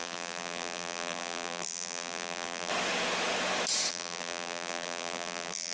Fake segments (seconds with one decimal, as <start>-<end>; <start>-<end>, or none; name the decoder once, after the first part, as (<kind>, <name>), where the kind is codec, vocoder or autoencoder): 0.0-2.7 (vocoder, BigVGAN v2); 3.9-5.7